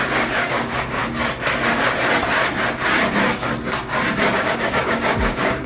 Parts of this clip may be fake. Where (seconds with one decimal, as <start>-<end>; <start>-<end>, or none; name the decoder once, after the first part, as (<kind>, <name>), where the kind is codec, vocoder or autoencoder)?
0.0-1.0 (codec, DAC); 4.4-5.7